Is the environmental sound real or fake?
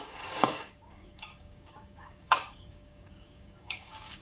fake